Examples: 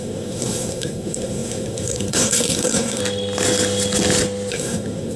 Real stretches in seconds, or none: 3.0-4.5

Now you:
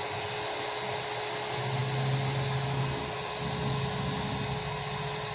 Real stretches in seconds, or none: 0.0-5.3